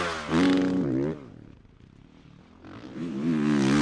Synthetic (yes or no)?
no